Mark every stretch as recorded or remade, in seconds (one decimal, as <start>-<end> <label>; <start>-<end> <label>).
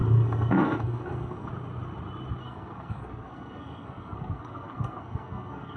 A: 0.0-1.5 remade; 1.5-2.4 recorded; 2.4-5.8 remade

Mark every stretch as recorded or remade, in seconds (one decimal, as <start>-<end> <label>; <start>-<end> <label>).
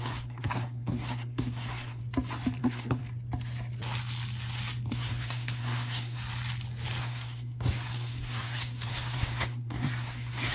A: 0.0-2.0 remade; 2.0-2.6 recorded; 2.6-3.0 remade; 3.0-4.9 recorded; 4.9-6.2 remade; 6.2-7.0 recorded; 7.0-10.5 remade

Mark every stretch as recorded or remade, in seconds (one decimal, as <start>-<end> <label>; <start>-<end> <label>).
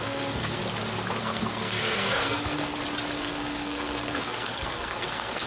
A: 0.0-0.6 remade; 0.6-1.2 recorded; 1.2-2.7 remade; 2.7-3.2 recorded; 3.2-5.5 remade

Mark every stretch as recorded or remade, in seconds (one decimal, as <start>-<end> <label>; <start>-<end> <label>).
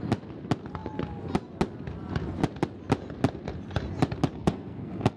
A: 0.0-4.3 recorded; 4.3-5.2 remade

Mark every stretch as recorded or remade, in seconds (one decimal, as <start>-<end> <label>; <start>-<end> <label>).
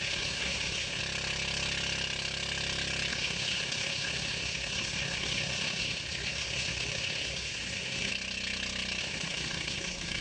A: 0.0-1.0 remade; 1.0-3.1 recorded; 3.1-8.1 remade; 8.1-9.0 recorded; 9.0-10.2 remade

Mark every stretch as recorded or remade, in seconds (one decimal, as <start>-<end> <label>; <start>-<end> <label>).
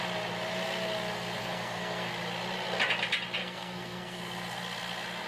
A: 0.0-1.4 recorded; 1.4-2.1 remade; 2.1-3.4 recorded; 3.4-4.2 remade; 4.2-5.3 recorded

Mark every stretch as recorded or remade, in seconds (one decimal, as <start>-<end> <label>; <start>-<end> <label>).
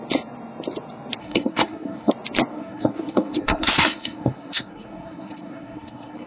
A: 0.0-1.2 recorded; 1.2-2.1 remade; 2.1-2.5 recorded; 2.5-6.3 remade